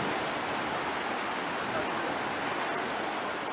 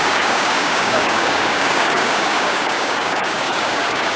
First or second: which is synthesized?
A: second